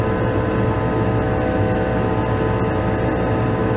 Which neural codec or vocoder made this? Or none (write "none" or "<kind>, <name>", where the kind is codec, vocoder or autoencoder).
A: none